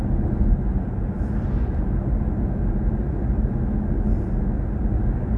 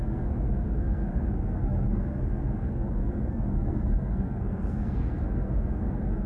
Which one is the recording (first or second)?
first